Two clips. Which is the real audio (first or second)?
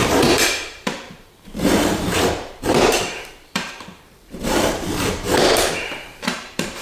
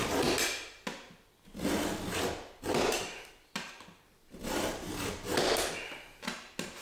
second